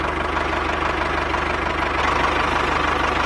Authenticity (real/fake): real